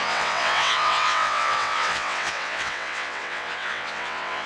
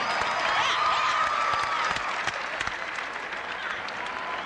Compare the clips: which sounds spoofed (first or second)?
first